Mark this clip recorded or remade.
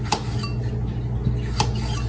recorded